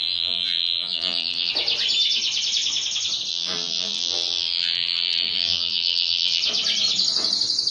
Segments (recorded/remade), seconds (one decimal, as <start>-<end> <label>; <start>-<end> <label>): 0.0-1.5 remade; 1.5-3.3 recorded; 3.3-6.4 remade; 6.4-7.7 recorded